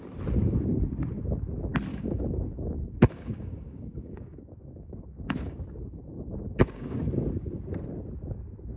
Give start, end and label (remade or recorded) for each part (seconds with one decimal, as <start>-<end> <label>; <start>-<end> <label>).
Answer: 0.0-1.9 recorded; 1.9-5.6 remade; 5.6-6.1 recorded; 6.1-7.0 remade; 7.0-8.8 recorded